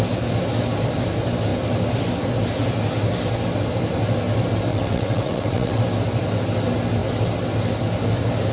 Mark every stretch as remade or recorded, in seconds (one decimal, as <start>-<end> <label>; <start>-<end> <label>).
0.0-4.7 recorded; 4.7-5.8 remade; 5.8-8.5 recorded